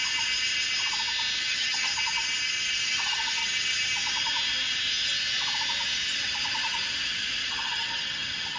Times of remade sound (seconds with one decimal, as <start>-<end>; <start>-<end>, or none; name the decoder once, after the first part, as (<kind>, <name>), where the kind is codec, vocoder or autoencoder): 1.4-1.9 (vocoder, HiFi-GAN); 2.8-3.4; 7.5-8.6

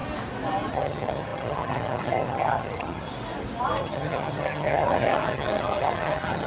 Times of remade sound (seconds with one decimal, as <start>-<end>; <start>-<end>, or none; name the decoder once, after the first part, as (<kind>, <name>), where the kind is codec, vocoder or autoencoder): 0.7-3.1 (vocoder, HiFi-GAN); 3.8-6.5

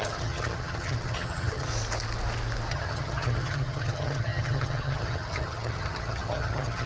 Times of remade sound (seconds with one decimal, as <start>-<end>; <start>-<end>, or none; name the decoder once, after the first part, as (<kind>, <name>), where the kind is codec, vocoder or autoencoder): 0.0-1.7 (vocoder, HiFi-GAN); 2.7-6.9

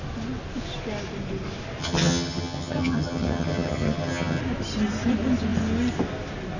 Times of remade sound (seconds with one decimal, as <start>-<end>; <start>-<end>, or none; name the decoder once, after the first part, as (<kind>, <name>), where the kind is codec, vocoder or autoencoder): 1.8-4.4 (vocoder, HiFi-GAN)

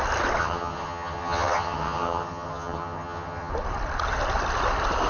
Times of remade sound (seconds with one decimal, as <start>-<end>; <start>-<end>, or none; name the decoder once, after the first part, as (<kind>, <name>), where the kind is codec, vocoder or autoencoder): 0.4-3.5 (vocoder, HiFi-GAN)